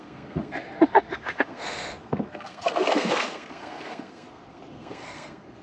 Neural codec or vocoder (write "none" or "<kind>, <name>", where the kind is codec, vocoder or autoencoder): codec, SNAC